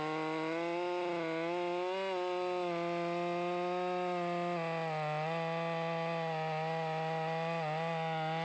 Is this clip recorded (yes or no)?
yes